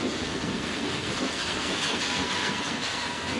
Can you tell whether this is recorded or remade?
remade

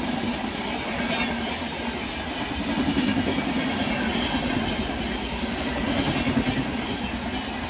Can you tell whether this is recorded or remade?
recorded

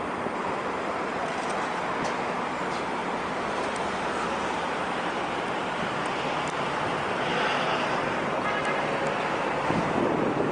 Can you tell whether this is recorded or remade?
recorded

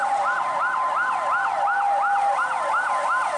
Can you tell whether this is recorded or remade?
recorded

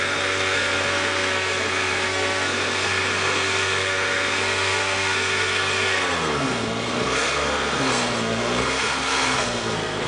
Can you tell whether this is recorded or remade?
remade